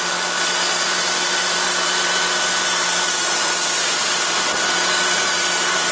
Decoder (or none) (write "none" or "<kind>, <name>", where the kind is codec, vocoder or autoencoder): vocoder, BigVGAN v2